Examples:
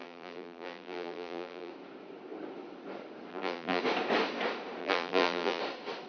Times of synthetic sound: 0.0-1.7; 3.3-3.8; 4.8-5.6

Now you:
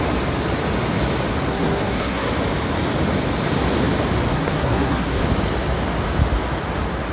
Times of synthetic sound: 1.5-2.3; 4.3-5.2

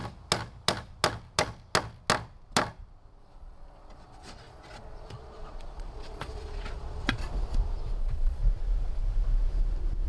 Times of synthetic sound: 3.2-7.2; 8.0-8.4

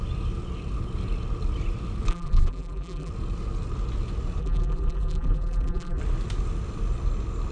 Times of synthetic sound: 2.1-3.1; 4.4-6.0